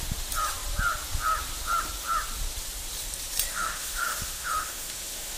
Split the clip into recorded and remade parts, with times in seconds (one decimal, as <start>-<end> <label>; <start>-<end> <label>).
0.0-3.5 recorded; 3.5-5.4 remade